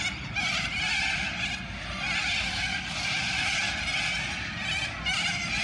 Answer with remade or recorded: recorded